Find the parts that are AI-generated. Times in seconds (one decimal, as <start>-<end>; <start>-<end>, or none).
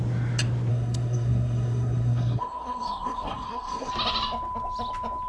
0.7-3.9